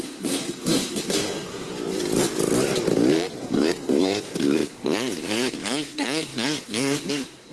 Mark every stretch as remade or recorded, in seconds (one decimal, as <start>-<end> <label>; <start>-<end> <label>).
0.0-1.7 remade; 1.7-3.4 recorded; 3.4-7.5 remade